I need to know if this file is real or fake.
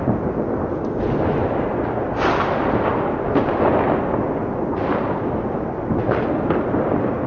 real